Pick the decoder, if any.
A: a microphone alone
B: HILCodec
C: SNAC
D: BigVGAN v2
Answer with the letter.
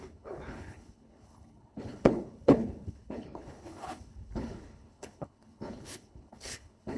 B